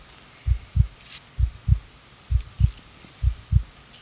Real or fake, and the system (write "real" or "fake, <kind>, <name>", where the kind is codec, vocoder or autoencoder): real